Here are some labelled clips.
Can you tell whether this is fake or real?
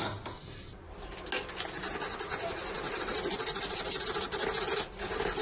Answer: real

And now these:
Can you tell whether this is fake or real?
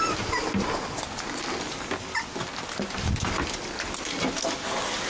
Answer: real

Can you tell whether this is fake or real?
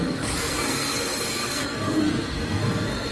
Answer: fake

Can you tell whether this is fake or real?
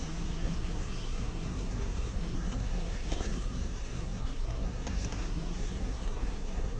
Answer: fake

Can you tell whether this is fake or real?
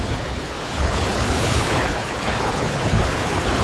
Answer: fake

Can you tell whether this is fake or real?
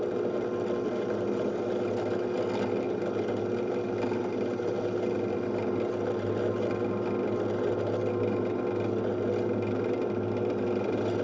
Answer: real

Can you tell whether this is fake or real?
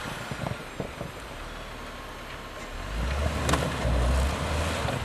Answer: real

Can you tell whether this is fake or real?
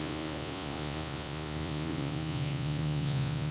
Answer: fake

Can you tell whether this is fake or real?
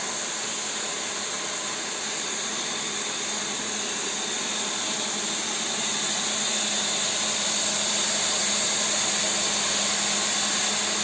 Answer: real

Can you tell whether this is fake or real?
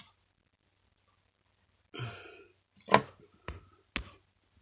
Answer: real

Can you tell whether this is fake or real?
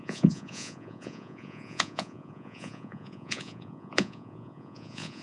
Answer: fake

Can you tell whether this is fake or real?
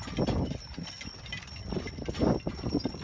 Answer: real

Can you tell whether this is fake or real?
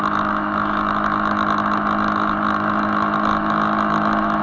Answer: fake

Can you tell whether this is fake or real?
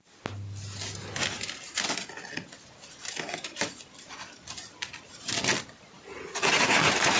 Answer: real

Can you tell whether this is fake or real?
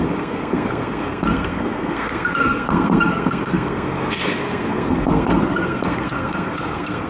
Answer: fake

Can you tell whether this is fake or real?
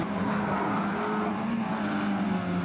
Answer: real